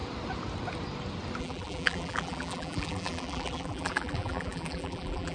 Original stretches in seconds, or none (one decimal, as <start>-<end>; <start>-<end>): 0.0-1.4